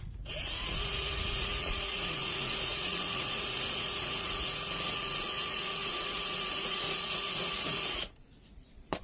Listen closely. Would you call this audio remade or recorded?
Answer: remade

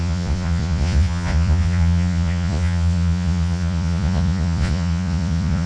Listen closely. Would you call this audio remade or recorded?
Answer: remade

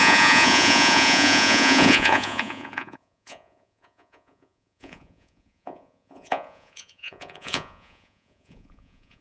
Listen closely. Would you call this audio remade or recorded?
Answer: remade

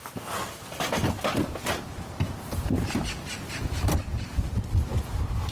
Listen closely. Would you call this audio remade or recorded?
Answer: recorded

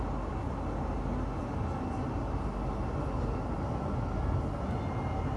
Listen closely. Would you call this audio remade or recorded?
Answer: recorded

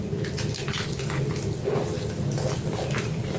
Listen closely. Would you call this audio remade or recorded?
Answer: recorded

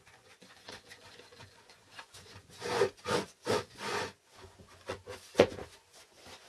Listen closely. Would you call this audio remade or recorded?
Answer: remade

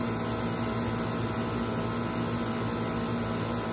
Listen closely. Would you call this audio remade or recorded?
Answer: recorded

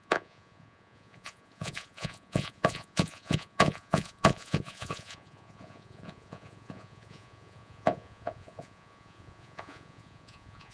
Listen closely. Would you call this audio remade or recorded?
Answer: remade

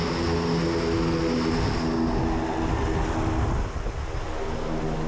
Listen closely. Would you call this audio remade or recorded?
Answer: recorded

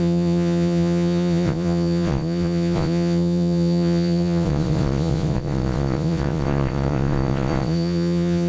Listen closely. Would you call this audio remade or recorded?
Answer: remade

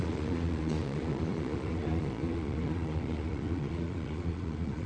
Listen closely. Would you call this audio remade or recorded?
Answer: remade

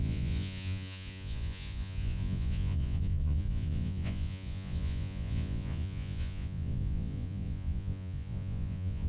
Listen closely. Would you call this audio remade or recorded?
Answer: remade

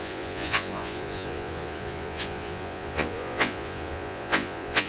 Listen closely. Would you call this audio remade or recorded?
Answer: remade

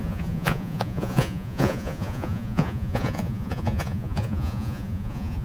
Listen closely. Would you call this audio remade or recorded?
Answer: remade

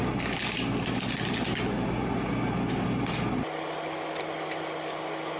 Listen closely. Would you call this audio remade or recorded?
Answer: recorded